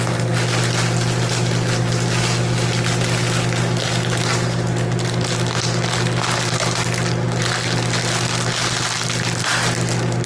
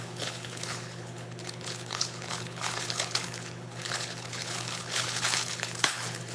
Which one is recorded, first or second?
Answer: first